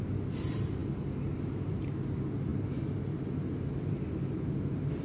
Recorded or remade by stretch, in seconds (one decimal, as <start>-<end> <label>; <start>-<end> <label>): 0.0-5.0 recorded